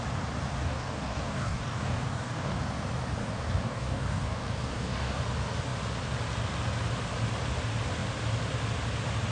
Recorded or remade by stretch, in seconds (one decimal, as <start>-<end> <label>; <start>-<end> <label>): 0.0-0.6 recorded; 0.6-2.6 remade; 2.6-3.2 recorded; 3.2-5.2 remade; 5.2-9.3 recorded

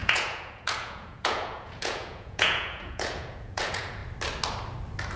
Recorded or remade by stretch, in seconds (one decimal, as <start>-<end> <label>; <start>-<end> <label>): 0.0-4.0 remade; 4.0-5.2 recorded

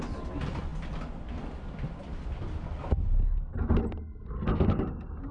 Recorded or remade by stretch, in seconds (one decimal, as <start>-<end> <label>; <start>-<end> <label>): 0.0-5.3 recorded

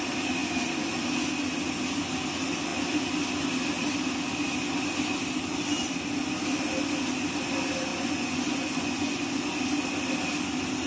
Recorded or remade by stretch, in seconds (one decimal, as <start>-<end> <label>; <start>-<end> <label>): 0.0-7.9 recorded; 7.9-9.4 remade; 9.4-10.9 recorded

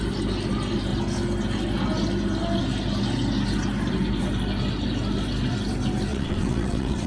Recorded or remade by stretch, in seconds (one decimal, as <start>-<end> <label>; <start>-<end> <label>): 0.0-6.1 recorded; 6.1-7.1 remade

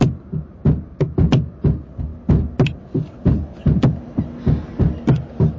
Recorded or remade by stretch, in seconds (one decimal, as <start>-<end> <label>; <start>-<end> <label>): 0.0-5.6 recorded